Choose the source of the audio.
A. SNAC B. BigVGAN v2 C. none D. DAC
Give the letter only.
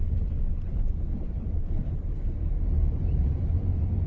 B